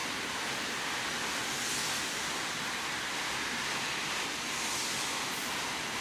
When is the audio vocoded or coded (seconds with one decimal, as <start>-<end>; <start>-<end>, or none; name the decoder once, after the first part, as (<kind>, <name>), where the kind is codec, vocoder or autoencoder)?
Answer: 0.0-0.8 (vocoder, BigVGAN v2)